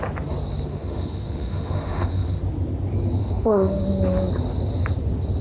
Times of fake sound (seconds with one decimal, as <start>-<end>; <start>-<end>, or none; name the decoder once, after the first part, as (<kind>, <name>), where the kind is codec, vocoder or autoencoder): 0.7-2.4 (autoencoder, DAC-VAE); 3.2-3.8